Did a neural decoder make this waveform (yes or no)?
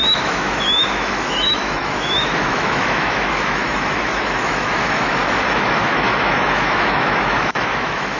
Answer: yes